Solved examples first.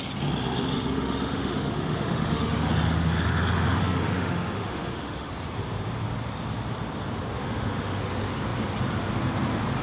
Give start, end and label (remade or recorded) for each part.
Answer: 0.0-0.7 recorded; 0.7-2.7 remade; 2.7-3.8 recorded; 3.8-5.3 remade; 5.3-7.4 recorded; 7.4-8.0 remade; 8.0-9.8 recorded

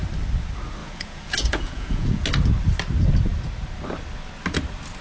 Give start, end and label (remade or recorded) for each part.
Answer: 0.0-0.8 recorded; 0.8-2.2 remade; 2.2-5.0 recorded

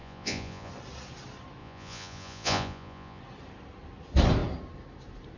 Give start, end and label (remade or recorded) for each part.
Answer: 0.0-0.7 remade; 0.7-1.6 recorded; 1.6-3.2 remade; 3.2-5.4 recorded

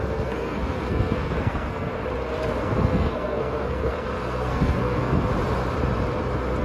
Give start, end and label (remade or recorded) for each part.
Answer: 0.0-1.9 remade; 1.9-2.6 recorded; 2.6-5.3 remade; 5.3-6.6 recorded

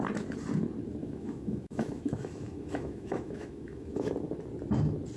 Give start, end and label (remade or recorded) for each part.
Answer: 0.0-1.0 recorded; 1.0-4.1 remade; 4.1-5.2 recorded

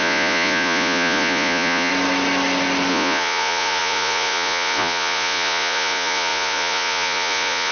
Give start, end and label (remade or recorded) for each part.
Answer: 0.0-1.9 remade; 1.9-2.9 recorded; 2.9-7.7 remade

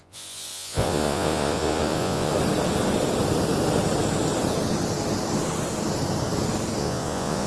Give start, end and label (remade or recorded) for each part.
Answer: 0.0-2.3 remade; 2.3-6.8 recorded; 6.8-7.5 remade